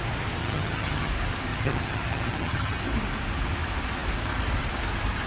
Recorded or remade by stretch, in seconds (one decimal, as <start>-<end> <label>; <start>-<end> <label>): 0.0-0.4 recorded; 0.4-1.1 remade; 1.1-1.5 recorded; 1.5-2.8 remade; 2.8-5.3 recorded